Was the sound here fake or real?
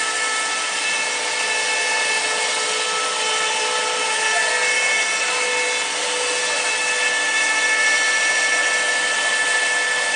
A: real